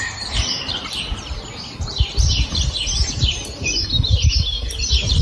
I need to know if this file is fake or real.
real